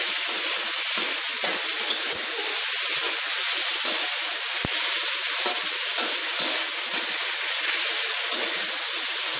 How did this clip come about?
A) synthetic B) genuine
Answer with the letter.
B